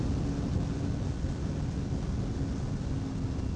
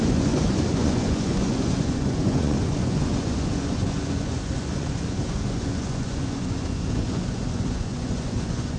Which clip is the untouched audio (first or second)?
first